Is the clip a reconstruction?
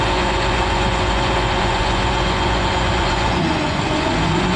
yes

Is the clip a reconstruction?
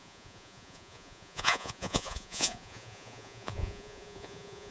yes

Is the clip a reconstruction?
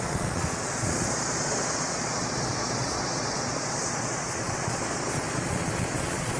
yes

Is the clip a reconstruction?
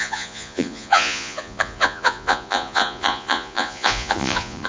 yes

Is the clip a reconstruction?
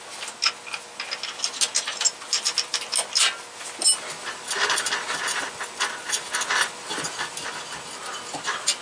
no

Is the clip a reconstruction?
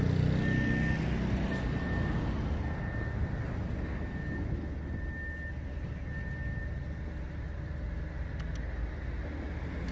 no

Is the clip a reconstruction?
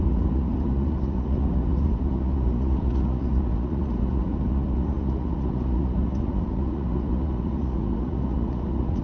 yes